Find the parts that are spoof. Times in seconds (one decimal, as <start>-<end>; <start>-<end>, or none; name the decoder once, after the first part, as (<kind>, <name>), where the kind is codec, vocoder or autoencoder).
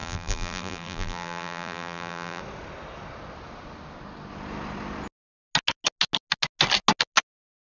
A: 0.0-2.4 (vocoder, BigVGAN v2)